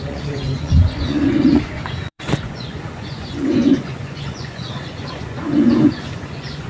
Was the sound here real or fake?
fake